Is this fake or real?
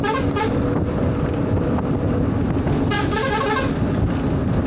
real